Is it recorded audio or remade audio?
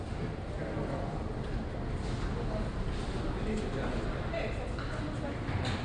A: recorded